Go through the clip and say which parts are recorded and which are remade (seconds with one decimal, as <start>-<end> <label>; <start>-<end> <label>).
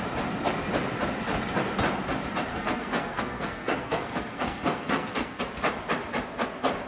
0.0-2.5 recorded; 2.5-5.4 remade; 5.4-6.9 recorded